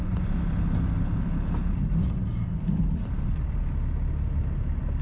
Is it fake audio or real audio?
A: real